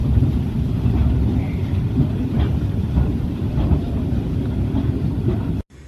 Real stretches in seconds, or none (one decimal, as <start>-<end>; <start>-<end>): none